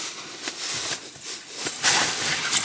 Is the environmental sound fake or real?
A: real